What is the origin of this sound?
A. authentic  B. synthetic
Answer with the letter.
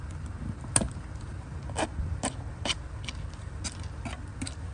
B